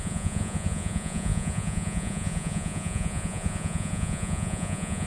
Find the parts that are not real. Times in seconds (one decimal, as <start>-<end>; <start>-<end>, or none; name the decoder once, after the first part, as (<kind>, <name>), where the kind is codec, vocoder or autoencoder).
0.0-5.1 (vocoder, Vocos)